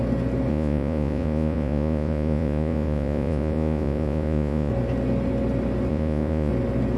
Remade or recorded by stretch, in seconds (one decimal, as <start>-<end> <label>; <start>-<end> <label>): 0.0-0.5 recorded; 0.5-4.7 remade; 4.7-5.9 recorded; 5.9-6.5 remade; 6.5-7.0 recorded